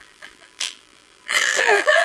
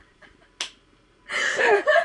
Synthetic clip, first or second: first